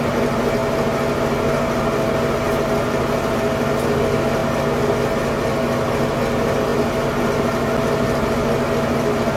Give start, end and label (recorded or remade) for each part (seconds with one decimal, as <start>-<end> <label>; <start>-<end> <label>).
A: 0.0-9.4 recorded